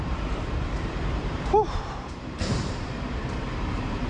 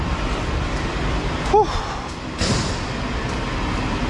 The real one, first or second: second